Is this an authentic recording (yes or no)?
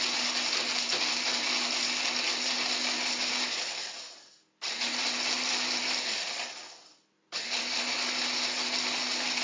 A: yes